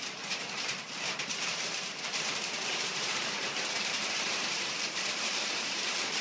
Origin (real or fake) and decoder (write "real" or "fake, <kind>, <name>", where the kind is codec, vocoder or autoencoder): fake, vocoder, BigVGAN v2